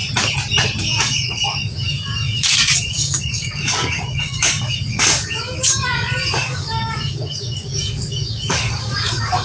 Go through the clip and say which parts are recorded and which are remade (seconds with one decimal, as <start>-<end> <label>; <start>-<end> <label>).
0.0-0.8 recorded; 0.8-9.4 remade